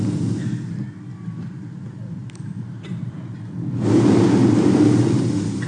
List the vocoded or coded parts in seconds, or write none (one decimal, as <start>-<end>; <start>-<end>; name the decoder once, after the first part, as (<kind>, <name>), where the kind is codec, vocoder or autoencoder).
none